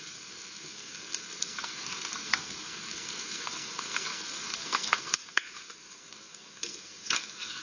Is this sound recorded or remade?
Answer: remade